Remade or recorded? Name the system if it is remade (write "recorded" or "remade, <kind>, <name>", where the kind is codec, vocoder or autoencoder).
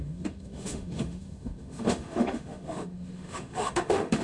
remade, autoencoder, DAC-VAE